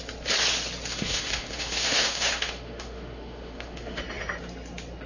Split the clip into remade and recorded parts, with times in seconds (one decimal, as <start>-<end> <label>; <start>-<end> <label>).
0.0-0.9 recorded; 0.9-4.0 remade; 4.0-5.1 recorded